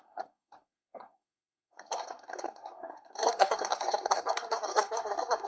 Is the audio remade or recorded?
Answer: remade